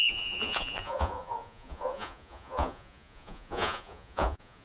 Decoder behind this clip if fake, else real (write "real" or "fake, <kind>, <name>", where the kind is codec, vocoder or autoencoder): fake, vocoder, Vocos